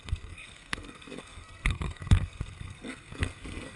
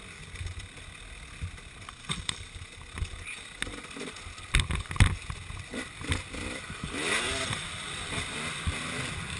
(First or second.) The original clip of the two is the second